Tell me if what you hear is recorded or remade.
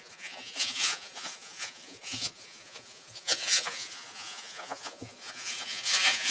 remade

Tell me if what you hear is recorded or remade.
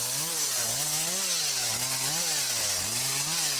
recorded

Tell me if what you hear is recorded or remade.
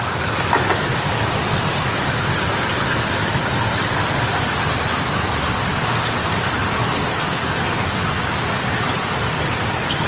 recorded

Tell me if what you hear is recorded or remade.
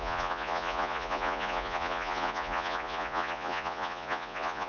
remade